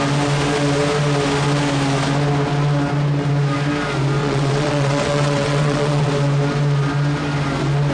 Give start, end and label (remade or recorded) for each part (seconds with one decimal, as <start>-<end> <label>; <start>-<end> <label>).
0.0-4.2 recorded; 4.2-6.1 remade; 6.1-7.9 recorded